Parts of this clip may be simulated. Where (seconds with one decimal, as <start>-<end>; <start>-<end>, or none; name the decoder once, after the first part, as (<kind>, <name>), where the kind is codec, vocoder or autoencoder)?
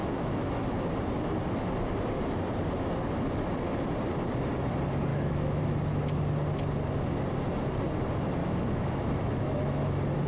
0.0-0.7 (autoencoder, DAC-VAE); 5.1-5.6; 8.4-9.8